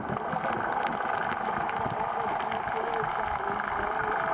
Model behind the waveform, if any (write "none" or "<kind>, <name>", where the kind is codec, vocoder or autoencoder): none